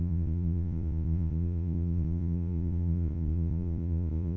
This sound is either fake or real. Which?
fake